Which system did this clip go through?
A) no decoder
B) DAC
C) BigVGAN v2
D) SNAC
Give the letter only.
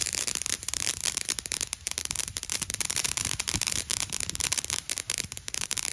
C